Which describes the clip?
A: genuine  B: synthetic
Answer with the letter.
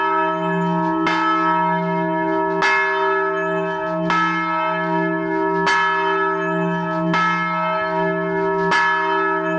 A